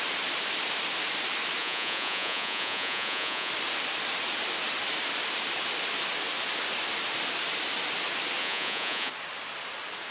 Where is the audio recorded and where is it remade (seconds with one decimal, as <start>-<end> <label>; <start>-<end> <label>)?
0.0-1.6 recorded; 1.6-3.5 remade; 3.5-8.4 recorded; 8.4-9.1 remade; 9.1-10.1 recorded